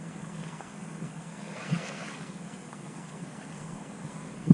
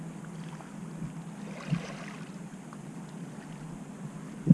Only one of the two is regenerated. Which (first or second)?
first